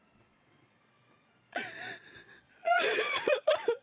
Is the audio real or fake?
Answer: fake